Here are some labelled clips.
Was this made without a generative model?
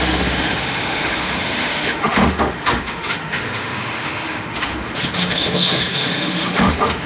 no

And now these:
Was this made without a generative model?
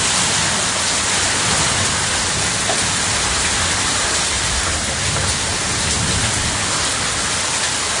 yes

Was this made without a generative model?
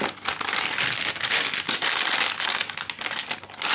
yes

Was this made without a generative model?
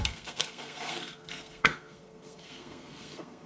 no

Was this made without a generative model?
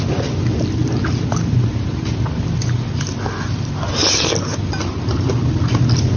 yes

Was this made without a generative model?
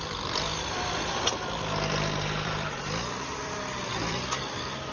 no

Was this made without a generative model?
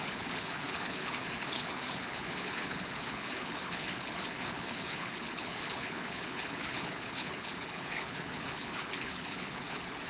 no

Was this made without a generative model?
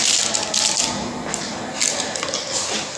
yes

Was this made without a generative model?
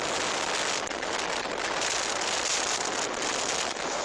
yes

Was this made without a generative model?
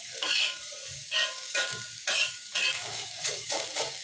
no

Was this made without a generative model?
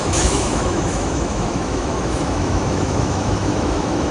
no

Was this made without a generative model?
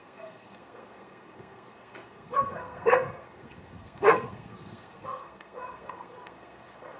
no